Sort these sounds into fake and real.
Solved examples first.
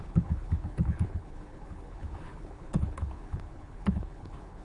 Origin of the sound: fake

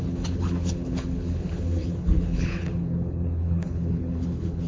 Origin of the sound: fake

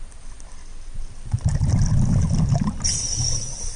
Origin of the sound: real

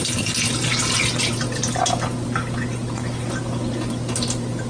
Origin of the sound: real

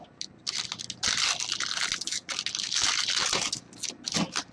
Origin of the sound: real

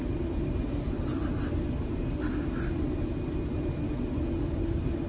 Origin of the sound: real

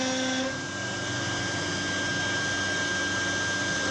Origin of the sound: real